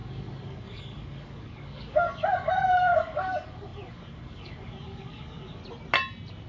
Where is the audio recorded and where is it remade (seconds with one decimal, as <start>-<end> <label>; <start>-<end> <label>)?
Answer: 0.0-5.6 remade; 5.6-6.5 recorded